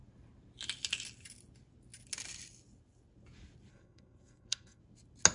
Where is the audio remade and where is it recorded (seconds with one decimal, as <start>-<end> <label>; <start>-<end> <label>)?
0.0-3.7 recorded; 3.7-4.8 remade; 4.8-5.3 recorded